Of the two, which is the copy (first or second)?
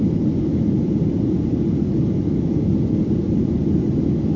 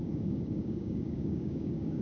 second